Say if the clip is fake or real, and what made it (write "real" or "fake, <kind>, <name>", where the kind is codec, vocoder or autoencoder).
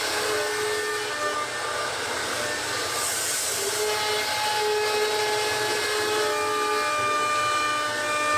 real